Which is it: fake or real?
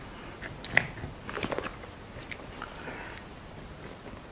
real